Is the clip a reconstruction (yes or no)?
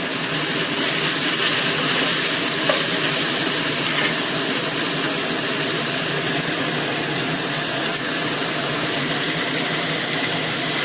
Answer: no